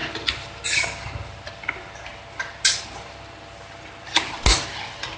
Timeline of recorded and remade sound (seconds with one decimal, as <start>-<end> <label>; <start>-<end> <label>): 0.0-5.2 recorded